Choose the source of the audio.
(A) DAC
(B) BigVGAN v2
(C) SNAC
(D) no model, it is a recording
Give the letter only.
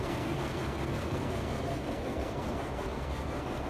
C